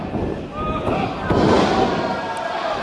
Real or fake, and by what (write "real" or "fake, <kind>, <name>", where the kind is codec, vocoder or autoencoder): real